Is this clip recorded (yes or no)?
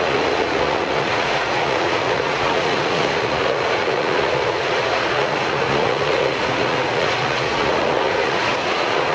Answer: no